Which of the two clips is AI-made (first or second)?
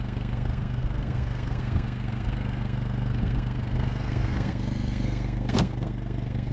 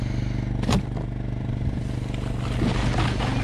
first